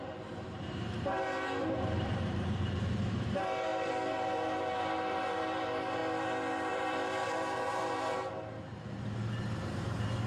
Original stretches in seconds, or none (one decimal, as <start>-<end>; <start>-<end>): 6.0-6.7